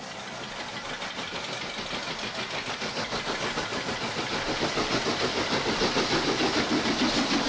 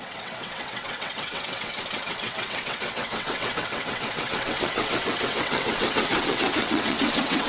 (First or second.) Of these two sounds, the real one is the first